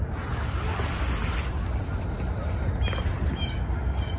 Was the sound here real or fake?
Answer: real